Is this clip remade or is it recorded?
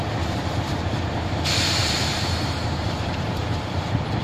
remade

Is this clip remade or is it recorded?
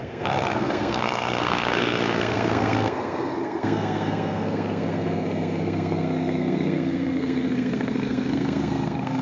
remade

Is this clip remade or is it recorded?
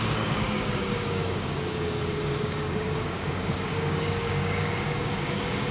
remade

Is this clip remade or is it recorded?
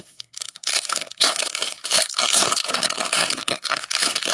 remade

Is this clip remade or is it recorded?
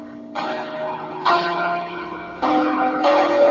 remade